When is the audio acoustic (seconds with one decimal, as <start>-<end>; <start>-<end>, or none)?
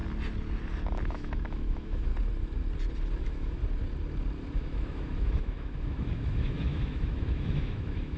0.0-1.1; 2.1-3.2; 3.6-4.6